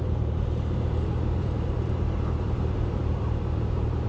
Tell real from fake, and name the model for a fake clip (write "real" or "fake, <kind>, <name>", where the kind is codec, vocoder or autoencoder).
fake, vocoder, BigVGAN v2